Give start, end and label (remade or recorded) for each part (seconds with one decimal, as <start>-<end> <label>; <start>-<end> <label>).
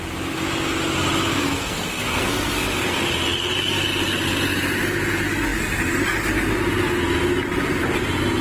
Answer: 0.0-1.3 recorded; 1.3-3.0 remade; 3.0-8.4 recorded